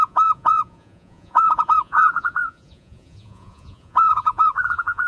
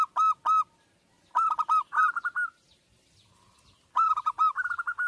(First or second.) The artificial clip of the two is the first